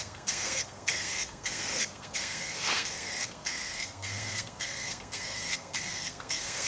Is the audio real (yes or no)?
no